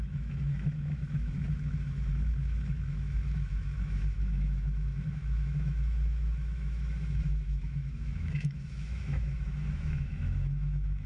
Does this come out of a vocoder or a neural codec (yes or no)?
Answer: yes